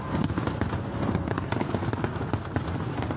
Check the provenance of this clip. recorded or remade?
recorded